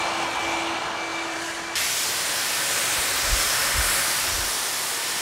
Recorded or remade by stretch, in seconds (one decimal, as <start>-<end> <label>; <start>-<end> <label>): 0.0-1.1 recorded; 1.1-1.8 remade; 1.8-5.2 recorded